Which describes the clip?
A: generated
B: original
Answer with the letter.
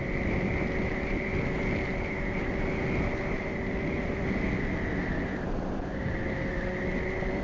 B